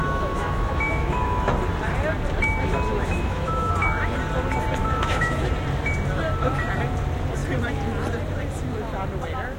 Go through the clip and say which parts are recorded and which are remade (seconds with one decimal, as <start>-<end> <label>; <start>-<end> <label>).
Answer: 0.0-1.5 remade; 1.5-2.9 recorded; 2.9-3.7 remade; 3.7-4.8 recorded; 4.8-5.5 remade; 5.5-9.6 recorded